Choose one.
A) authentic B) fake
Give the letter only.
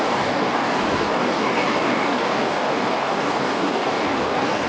B